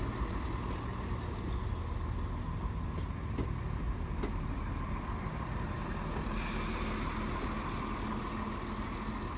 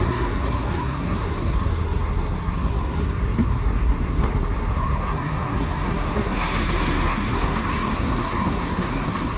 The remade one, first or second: second